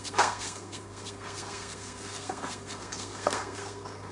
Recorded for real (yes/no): no